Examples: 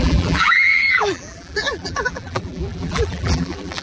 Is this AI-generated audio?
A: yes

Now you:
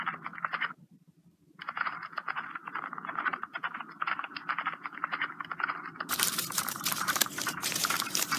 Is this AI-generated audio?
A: yes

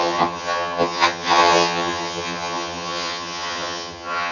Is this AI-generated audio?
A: yes